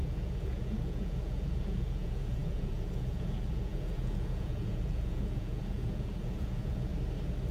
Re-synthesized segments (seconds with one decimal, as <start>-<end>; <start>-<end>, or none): 0.0-6.9